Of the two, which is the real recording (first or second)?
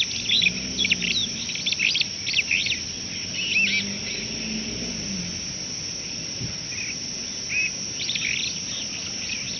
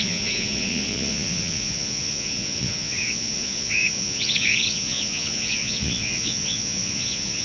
first